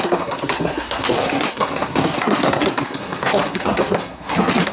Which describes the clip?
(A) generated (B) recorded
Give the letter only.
A